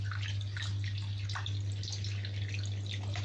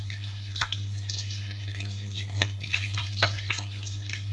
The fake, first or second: second